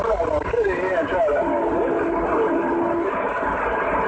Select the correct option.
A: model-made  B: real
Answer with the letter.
B